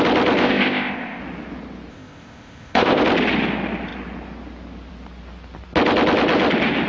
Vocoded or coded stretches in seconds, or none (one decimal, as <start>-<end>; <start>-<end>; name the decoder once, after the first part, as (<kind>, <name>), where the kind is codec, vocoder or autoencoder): 0.4-1.2 (codec, ZipCodec); 1.9-3.0

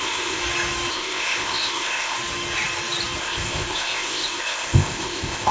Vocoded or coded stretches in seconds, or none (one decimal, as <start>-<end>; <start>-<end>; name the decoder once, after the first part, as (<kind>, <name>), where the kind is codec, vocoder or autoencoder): 0.0-0.4 (codec, ZipCodec); 0.9-2.2; 3.2-5.5

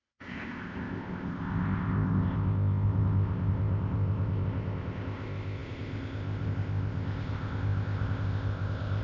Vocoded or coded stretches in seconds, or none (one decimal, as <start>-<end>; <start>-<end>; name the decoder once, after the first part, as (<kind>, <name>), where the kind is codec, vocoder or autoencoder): 0.0-9.0 (codec, ZipCodec)

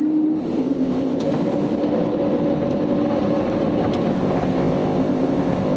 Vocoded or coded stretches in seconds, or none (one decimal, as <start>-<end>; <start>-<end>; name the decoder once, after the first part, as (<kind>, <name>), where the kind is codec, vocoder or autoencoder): 0.6-1.2 (codec, ZipCodec); 4.1-5.8